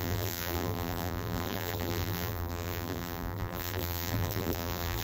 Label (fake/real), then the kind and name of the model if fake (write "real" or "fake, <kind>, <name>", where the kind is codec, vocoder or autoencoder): fake, vocoder, BigVGAN v2